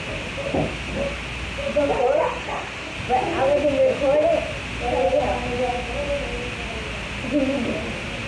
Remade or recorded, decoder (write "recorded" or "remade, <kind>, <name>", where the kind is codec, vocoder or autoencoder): recorded